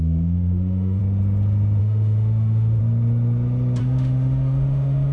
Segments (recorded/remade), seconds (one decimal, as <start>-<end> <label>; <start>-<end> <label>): 0.0-1.0 remade; 1.0-1.8 recorded; 1.8-2.8 remade; 2.8-3.8 recorded; 3.8-5.1 remade